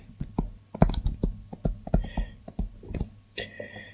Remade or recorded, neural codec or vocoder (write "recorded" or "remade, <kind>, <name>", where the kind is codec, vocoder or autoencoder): recorded